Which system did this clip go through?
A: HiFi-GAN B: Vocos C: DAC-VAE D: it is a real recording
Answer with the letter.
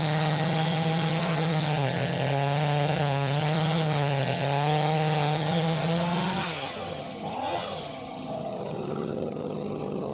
A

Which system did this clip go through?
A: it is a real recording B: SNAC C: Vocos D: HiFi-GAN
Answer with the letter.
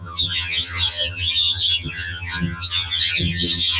D